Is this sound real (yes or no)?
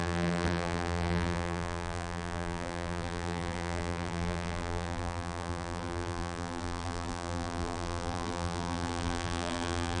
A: no